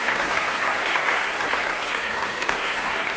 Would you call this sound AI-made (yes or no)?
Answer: yes